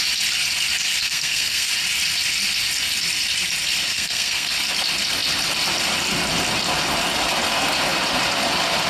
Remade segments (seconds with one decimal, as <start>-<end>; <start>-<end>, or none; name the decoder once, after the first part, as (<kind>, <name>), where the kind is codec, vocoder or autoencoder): 1.0-1.7 (codec, SNAC); 3.9-4.5